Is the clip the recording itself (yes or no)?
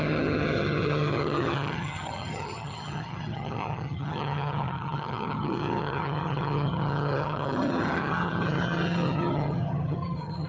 no